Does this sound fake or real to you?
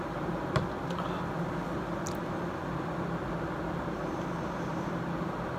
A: real